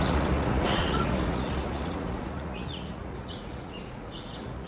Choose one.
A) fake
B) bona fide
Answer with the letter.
A